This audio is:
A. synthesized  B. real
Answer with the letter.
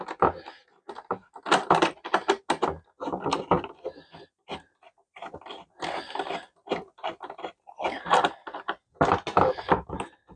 B